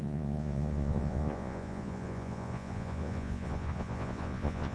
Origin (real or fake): fake